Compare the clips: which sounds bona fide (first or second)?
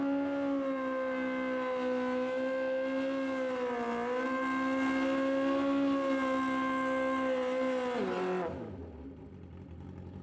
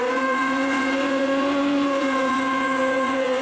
first